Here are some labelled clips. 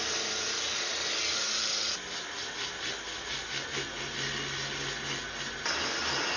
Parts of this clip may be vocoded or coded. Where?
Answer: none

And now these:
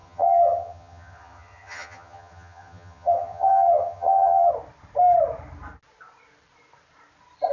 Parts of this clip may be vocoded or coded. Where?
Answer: 0.0-4.5 (vocoder, HiFi-GAN)

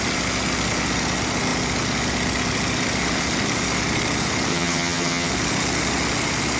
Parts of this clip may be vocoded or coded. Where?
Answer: 4.5-5.3 (vocoder, HiFi-GAN)

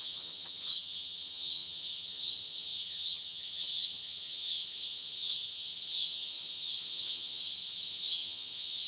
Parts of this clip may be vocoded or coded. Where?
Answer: 0.0-8.9 (vocoder, HiFi-GAN)

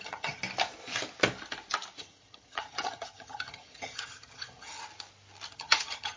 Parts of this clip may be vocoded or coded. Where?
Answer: 0.0-0.4 (vocoder, HiFi-GAN); 2.0-4.8; 5.5-6.2

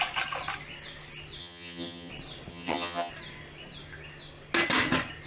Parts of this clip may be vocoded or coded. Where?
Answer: 1.4-2.1 (vocoder, HiFi-GAN); 2.5-3.1

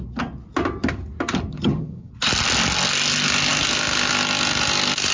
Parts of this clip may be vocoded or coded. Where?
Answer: 1.5-2.1 (vocoder, HiFi-GAN)